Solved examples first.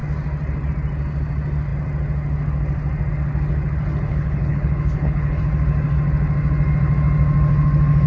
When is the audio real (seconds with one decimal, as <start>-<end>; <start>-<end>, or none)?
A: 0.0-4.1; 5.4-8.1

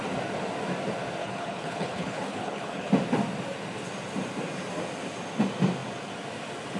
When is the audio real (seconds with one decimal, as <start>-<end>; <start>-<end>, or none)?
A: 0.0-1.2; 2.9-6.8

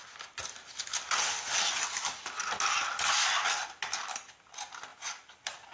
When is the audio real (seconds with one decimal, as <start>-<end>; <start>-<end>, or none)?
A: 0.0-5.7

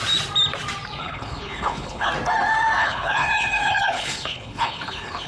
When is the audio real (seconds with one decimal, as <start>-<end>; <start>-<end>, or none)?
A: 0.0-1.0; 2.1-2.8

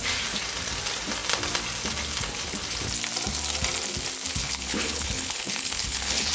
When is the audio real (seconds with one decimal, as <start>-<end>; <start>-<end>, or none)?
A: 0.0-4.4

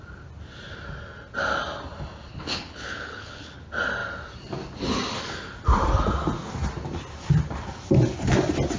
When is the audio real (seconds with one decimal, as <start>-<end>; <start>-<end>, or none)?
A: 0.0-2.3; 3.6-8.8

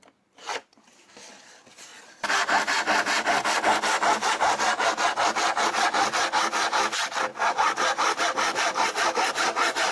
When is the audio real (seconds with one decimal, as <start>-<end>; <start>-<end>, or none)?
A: 0.0-9.9

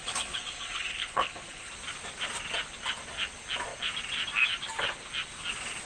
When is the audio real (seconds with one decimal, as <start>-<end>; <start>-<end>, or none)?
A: 1.7-5.9